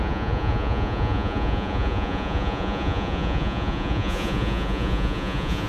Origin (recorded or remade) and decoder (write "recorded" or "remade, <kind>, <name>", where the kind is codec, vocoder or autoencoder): remade, vocoder, Vocos